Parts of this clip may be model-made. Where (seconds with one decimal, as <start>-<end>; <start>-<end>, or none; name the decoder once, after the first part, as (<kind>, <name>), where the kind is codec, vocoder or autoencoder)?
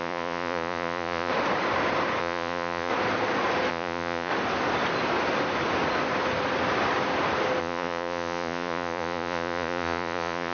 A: 0.0-1.3 (vocoder, Vocos); 2.2-2.9; 3.7-4.3; 7.6-10.5